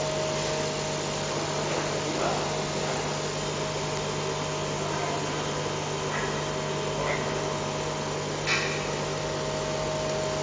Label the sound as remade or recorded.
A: recorded